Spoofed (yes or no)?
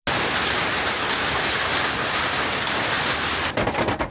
no